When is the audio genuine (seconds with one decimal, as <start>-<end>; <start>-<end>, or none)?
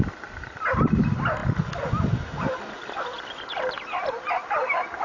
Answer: 0.0-5.0